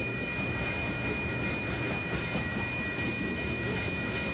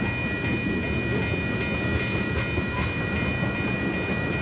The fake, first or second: first